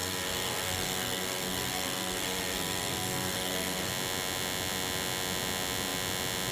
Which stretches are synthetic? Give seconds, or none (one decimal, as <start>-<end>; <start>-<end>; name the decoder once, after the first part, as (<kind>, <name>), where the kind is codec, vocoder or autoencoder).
0.0-3.9 (codec, SNAC)

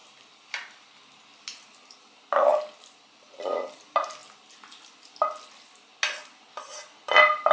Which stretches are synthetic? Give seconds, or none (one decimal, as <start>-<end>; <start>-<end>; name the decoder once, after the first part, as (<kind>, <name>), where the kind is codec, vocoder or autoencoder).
none